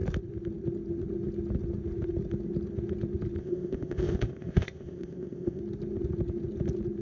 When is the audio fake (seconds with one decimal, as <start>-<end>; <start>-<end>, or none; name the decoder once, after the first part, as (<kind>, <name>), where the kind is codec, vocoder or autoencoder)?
3.4-5.6 (codec, ZipCodec)